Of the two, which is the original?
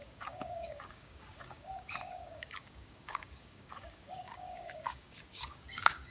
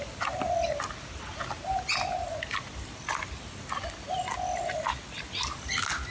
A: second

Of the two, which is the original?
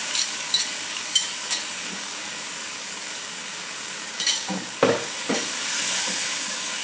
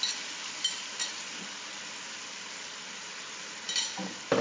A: second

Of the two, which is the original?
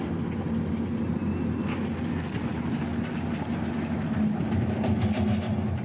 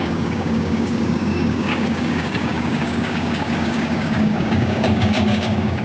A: first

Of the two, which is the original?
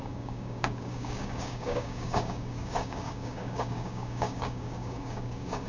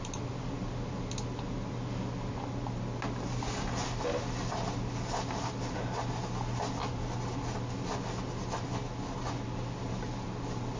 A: second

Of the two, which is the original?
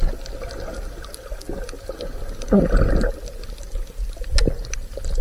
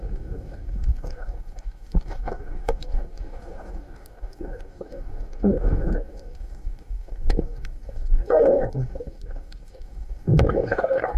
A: first